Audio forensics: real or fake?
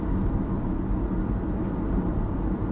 real